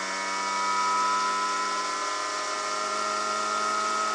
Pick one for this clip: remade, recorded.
recorded